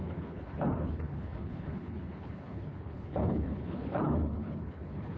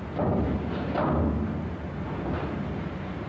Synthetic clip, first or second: first